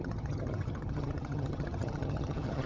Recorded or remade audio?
remade